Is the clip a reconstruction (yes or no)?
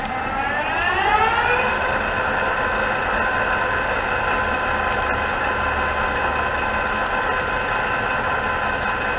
no